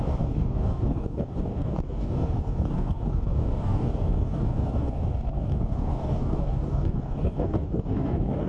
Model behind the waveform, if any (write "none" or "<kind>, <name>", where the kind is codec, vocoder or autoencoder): codec, DAC